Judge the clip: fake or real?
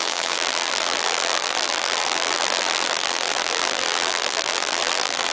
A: fake